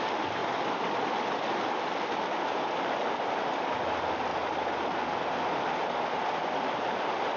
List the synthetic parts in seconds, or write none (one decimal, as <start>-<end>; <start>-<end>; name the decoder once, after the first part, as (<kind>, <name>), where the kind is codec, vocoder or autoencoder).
none